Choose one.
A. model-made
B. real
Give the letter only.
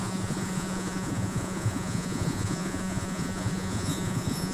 A